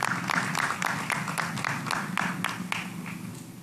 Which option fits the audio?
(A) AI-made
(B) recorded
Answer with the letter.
B